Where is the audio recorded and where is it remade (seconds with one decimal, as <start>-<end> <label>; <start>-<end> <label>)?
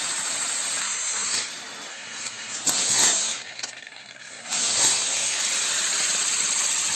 0.0-0.8 recorded; 0.8-1.5 remade; 1.5-1.9 recorded; 1.9-5.4 remade; 5.4-7.0 recorded